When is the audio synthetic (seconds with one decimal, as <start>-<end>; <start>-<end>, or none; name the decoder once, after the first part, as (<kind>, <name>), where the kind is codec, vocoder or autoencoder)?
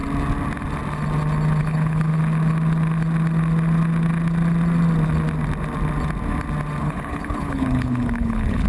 1.6-2.1 (codec, HILCodec); 6.8-8.7